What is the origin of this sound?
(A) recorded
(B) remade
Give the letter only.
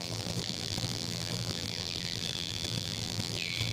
B